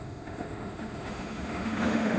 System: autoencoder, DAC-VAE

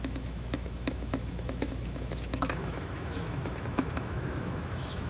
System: autoencoder, DAC-VAE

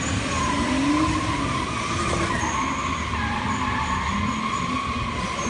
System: none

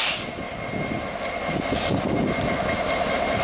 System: none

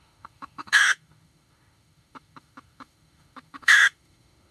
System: autoencoder, DAC-VAE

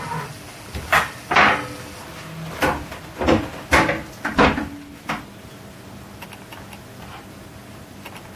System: none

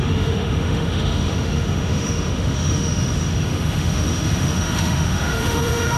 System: autoencoder, DAC-VAE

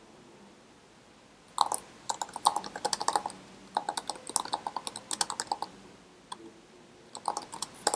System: none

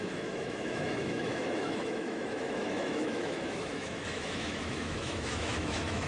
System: autoencoder, DAC-VAE